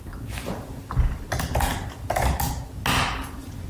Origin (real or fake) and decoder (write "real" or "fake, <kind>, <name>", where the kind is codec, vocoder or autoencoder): real